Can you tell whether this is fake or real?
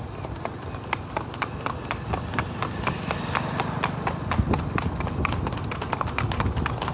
real